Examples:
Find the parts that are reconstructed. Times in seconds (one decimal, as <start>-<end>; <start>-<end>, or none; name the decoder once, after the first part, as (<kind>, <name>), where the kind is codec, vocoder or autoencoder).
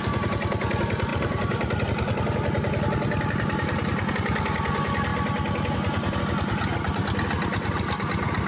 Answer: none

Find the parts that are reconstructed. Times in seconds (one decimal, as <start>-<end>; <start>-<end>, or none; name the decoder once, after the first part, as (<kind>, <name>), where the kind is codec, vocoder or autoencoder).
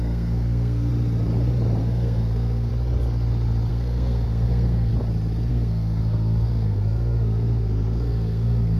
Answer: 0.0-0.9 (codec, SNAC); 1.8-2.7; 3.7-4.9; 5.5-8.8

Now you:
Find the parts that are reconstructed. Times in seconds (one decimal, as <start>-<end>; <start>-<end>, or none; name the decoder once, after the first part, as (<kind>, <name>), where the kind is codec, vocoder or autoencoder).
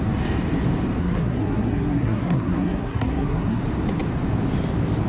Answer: 1.0-3.6 (codec, SNAC)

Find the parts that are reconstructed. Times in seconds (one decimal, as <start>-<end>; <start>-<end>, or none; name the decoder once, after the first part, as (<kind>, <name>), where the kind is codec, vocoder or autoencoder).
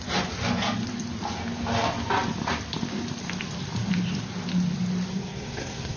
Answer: 5.1-6.0 (codec, SNAC)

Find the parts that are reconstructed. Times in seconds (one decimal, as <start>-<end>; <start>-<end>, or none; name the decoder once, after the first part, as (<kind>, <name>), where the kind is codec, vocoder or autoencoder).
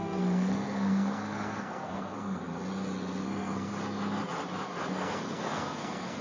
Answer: 0.0-2.4 (codec, SNAC); 3.2-3.7; 4.9-6.2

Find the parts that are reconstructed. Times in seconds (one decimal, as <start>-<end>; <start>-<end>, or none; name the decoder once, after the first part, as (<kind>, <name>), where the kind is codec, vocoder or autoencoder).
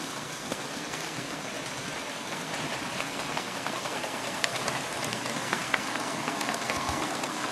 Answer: 0.0-1.5 (codec, SNAC); 2.1-2.5; 3.0-4.6; 5.1-7.5